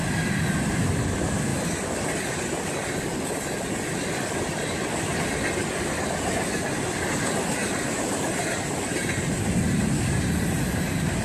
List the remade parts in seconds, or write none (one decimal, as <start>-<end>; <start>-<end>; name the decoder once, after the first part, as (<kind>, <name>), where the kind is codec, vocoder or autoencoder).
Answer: 1.5-2.2 (vocoder, BigVGAN v2); 7.6-9.9